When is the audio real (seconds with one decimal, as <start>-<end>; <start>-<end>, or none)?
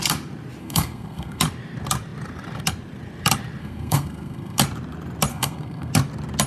0.0-0.6; 1.4-3.6; 4.6-5.3; 5.9-6.5